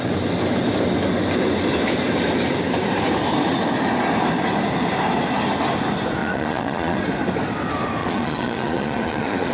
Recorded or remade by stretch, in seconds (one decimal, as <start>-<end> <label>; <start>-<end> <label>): 0.0-6.2 recorded; 6.2-7.0 remade; 7.0-8.0 recorded; 8.0-9.5 remade